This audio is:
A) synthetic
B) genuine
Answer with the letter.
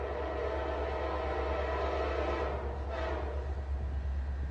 B